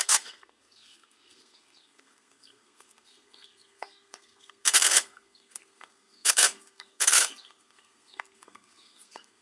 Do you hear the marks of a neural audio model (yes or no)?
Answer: yes